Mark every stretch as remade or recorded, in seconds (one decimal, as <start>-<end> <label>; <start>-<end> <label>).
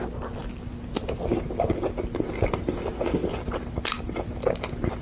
0.0-5.0 recorded